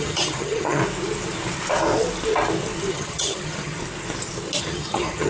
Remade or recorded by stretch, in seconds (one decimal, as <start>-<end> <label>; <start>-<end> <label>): 0.0-0.8 remade; 0.8-2.9 recorded; 2.9-3.8 remade; 3.8-4.6 recorded; 4.6-5.3 remade